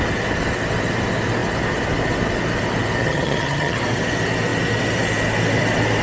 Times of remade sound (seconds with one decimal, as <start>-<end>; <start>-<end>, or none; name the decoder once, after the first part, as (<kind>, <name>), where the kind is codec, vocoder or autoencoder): 3.0-3.8 (vocoder, HiFi-GAN)